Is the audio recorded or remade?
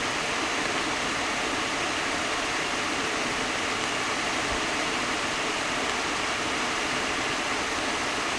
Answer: recorded